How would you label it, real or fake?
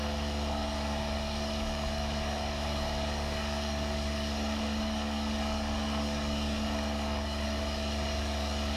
fake